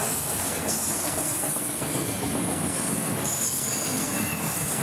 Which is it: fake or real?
fake